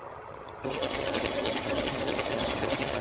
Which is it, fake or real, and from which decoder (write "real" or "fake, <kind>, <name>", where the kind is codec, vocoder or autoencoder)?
fake, vocoder, HiFi-GAN